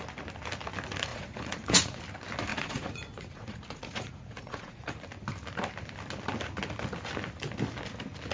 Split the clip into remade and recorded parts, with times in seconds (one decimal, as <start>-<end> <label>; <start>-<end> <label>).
0.0-1.1 recorded; 1.1-2.0 remade; 2.0-2.5 recorded; 2.5-5.0 remade; 5.0-8.3 recorded